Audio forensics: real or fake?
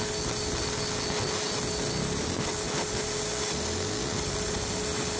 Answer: real